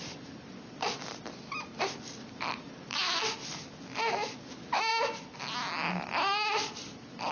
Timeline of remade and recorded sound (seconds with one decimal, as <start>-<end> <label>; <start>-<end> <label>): 0.0-7.3 recorded